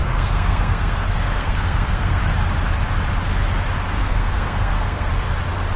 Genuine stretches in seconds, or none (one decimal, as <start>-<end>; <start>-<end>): 2.2-4.0; 5.1-5.8